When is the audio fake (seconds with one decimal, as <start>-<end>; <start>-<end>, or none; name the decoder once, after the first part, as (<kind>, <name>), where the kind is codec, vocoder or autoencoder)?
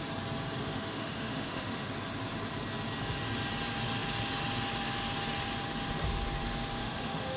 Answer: 0.6-1.9 (autoencoder, DAC-VAE); 6.8-7.4